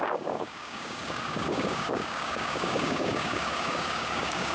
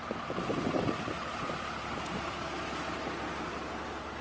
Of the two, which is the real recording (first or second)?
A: second